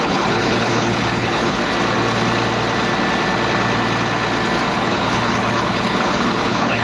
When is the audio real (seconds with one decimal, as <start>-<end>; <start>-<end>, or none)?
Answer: 1.7-4.7

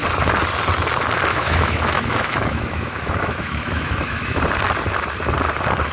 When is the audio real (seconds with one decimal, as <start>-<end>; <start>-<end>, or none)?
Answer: 0.0-1.3; 4.4-5.9